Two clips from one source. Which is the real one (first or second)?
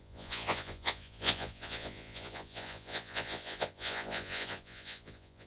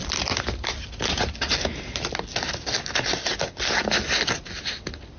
second